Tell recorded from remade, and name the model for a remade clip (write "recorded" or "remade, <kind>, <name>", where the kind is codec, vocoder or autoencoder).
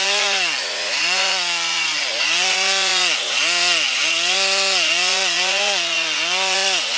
remade, vocoder, Vocos